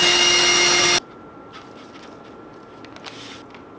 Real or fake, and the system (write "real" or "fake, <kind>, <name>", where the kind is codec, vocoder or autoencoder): real